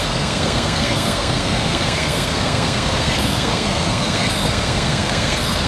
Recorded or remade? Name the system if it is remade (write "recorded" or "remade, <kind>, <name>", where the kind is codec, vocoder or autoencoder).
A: remade, codec, SNAC